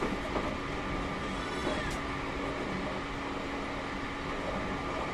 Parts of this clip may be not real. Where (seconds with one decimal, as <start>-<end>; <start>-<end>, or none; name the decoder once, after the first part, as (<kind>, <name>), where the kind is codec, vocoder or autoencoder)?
none